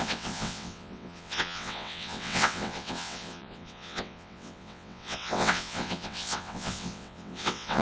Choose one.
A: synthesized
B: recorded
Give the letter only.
A